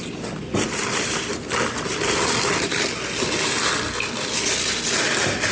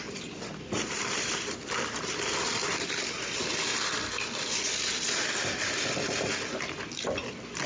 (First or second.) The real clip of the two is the first